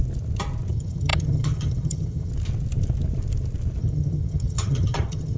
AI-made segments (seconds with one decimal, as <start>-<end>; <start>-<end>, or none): 0.7-2.3; 3.8-5.4

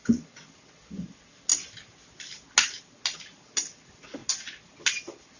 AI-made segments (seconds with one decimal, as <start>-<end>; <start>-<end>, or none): none

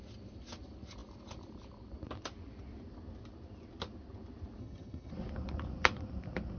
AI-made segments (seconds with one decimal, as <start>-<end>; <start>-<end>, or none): 4.6-5.1

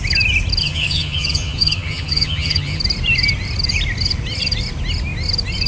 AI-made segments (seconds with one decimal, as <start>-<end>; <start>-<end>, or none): 0.6-2.8

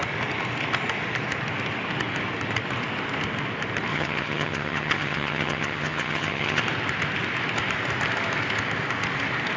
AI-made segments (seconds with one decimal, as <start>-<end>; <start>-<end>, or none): 3.9-6.6